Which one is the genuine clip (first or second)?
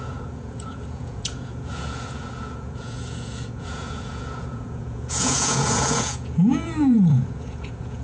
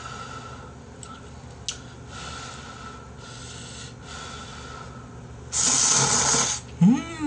second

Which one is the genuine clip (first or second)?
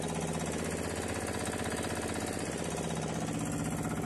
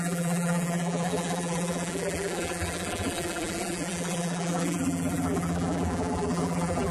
first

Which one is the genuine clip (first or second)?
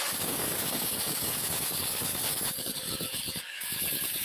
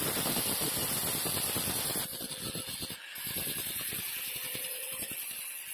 second